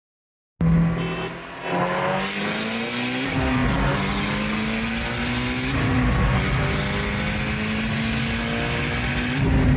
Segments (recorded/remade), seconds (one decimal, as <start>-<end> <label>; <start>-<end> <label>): 0.0-9.8 recorded